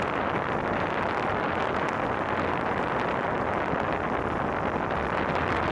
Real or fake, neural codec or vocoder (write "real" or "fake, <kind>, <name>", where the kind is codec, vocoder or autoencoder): real